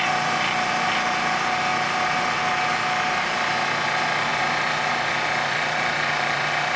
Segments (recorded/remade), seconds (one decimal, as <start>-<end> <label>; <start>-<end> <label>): 0.0-4.3 recorded; 4.3-6.8 remade